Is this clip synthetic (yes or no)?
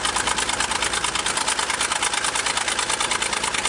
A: no